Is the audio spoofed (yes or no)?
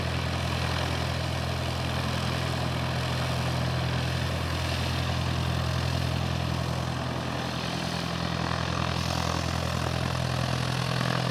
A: no